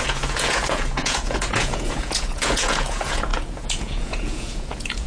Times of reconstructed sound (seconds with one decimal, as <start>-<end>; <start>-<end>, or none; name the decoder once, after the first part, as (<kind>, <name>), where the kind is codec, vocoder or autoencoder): 0.0-5.1 (vocoder, Vocos)